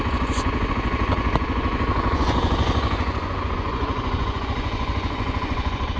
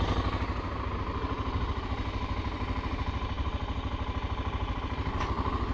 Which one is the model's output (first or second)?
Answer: first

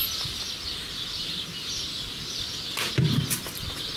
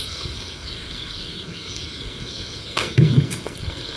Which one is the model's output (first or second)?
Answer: second